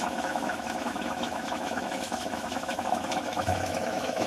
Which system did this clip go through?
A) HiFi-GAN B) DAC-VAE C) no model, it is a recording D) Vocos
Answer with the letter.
B